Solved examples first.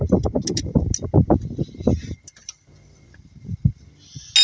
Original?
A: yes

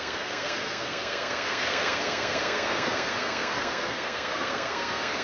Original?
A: no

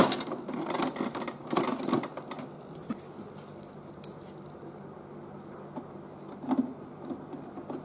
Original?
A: yes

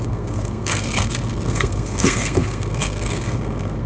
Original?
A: no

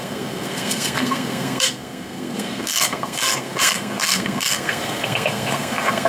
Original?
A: no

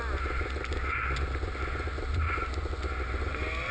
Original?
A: yes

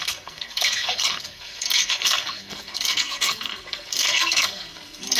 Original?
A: no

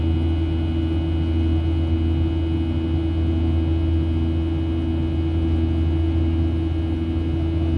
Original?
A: yes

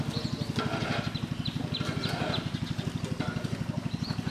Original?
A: yes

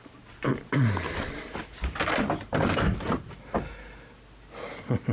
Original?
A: yes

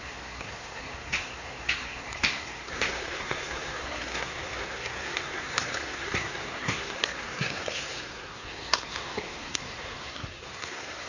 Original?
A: no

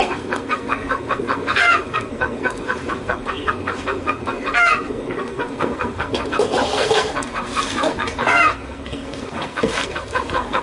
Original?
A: no